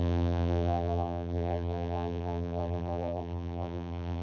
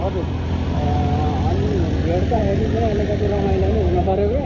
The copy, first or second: first